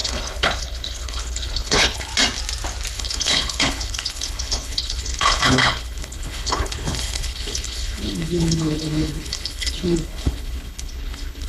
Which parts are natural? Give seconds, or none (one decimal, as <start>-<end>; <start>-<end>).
2.1-2.9